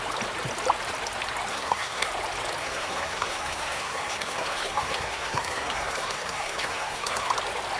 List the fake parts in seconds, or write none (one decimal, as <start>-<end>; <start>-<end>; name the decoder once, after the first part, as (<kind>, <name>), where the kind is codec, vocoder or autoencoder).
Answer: 1.5-2.1 (codec, SNAC); 2.6-7.3